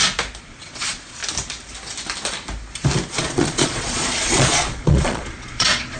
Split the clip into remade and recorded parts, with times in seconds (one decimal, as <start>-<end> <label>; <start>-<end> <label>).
0.0-0.5 recorded; 0.5-1.2 remade; 1.2-3.2 recorded; 3.2-6.0 remade